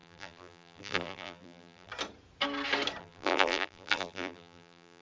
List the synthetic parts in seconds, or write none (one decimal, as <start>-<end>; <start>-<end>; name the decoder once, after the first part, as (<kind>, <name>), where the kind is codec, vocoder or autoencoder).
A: 0.0-1.9 (vocoder, BigVGAN v2); 3.0-5.0